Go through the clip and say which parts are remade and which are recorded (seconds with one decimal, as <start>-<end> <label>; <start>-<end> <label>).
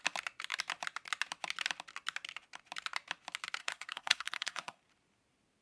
0.0-3.6 recorded; 3.6-4.8 remade; 4.8-5.6 recorded